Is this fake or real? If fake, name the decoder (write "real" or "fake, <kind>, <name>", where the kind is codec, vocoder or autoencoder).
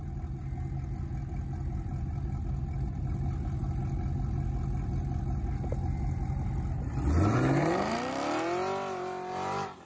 real